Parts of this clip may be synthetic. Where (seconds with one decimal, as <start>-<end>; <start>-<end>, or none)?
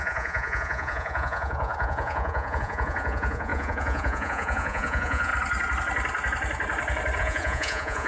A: 0.0-5.3; 7.2-8.1